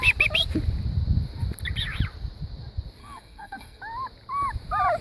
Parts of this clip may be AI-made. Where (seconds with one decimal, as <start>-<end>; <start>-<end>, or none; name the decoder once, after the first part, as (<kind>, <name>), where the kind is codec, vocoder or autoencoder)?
3.0-3.8 (codec, SNAC)